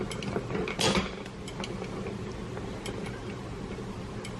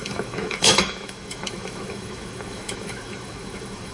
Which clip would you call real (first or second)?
first